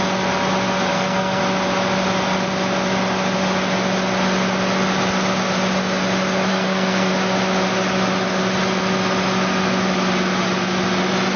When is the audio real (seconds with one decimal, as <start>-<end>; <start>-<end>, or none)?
0.0-0.9; 1.4-6.5; 7.1-11.4